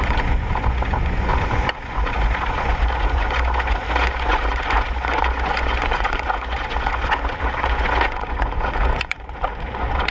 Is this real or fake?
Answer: fake